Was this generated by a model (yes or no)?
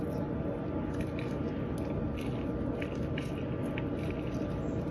no